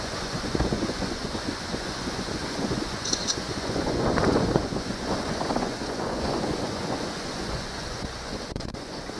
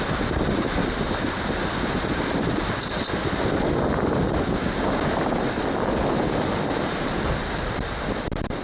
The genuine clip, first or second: second